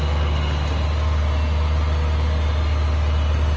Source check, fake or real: real